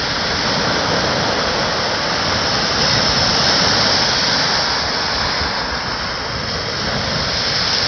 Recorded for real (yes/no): yes